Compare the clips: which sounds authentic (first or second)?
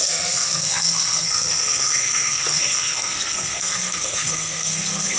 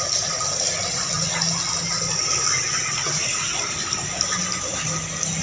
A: second